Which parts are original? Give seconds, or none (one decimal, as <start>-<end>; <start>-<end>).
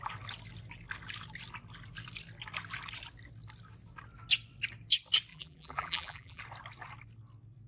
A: 0.0-5.3; 6.4-7.7